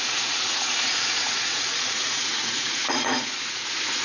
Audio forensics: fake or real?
fake